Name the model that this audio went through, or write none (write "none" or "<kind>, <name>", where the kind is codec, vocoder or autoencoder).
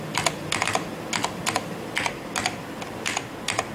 none